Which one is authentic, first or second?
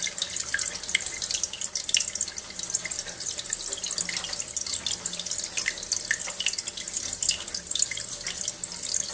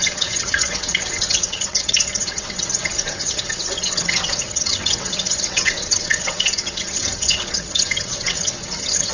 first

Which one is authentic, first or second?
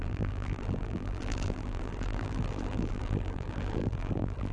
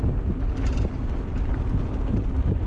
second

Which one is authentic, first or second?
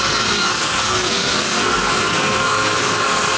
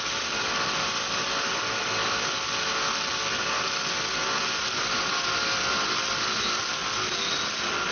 second